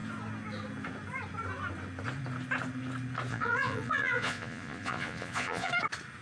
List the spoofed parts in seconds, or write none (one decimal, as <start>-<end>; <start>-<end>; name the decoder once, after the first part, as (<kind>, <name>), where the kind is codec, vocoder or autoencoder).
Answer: 3.3-5.7 (vocoder, Vocos)